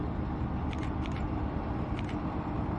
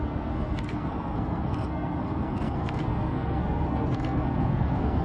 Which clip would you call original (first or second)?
first